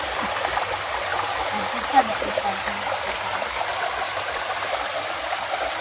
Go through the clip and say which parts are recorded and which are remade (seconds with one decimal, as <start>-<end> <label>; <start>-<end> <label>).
0.0-1.1 recorded; 1.1-2.2 remade; 2.2-5.8 recorded